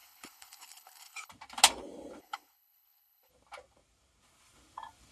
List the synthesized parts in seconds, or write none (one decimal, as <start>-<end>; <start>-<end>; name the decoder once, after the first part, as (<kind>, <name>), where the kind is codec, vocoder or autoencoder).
0.0-1.3 (codec, HILCodec); 2.2-3.3